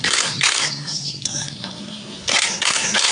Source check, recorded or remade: remade